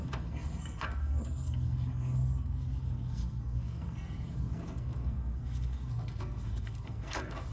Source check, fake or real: fake